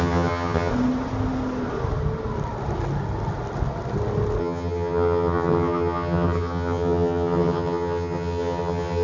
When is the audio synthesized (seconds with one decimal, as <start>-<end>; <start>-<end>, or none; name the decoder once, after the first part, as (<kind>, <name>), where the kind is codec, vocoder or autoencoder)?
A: 0.0-0.7 (vocoder, HiFi-GAN); 4.4-9.0